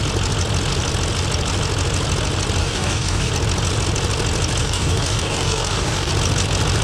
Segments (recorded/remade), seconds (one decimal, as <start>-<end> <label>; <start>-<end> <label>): 0.0-2.6 recorded; 2.6-3.3 remade; 3.3-4.6 recorded; 4.6-6.1 remade; 6.1-6.8 recorded